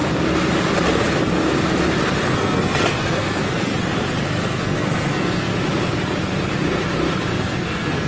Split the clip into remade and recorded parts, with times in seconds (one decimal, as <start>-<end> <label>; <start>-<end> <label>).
0.0-2.3 recorded; 2.3-3.7 remade; 3.7-4.4 recorded; 4.4-5.5 remade; 5.5-7.4 recorded; 7.4-8.1 remade